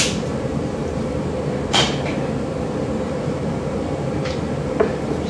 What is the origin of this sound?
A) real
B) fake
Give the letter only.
B